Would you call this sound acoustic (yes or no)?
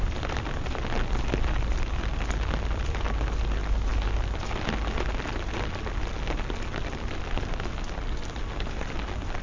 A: yes